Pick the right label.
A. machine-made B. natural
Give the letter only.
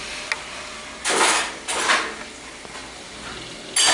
B